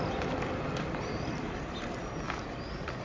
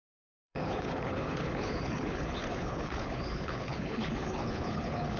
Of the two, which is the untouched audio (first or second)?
first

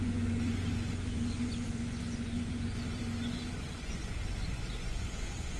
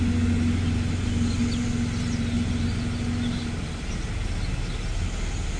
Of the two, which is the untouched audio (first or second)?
second